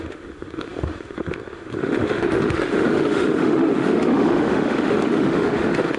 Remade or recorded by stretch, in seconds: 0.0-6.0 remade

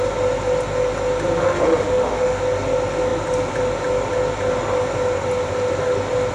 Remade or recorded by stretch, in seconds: 0.0-1.4 recorded; 1.4-2.4 remade; 2.4-6.3 recorded

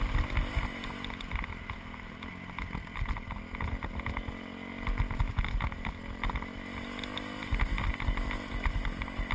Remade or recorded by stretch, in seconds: 0.0-9.3 recorded

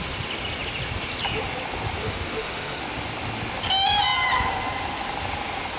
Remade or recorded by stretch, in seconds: 0.0-2.0 recorded; 2.0-2.8 remade; 2.8-5.8 recorded

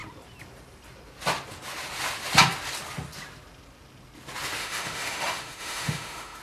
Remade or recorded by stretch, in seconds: 0.0-4.6 recorded; 4.6-6.4 remade